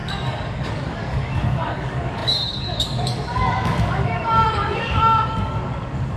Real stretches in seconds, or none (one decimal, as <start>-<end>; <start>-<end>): none